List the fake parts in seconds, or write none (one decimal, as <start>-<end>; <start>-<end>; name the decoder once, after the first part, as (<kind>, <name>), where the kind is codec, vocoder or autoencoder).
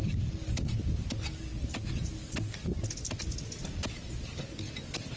none